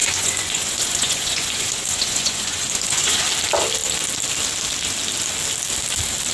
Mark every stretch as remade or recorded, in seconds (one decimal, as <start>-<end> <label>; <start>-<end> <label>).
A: 0.0-3.2 remade; 3.2-6.3 recorded